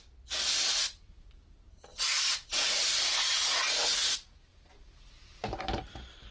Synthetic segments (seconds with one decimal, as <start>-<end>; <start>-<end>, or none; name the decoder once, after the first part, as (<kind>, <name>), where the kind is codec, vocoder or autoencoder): 1.9-3.2 (vocoder, BigVGAN v2); 4.5-5.6